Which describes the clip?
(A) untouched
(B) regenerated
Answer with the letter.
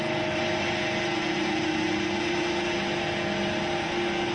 A